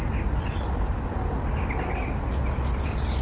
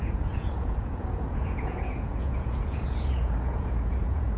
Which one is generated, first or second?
second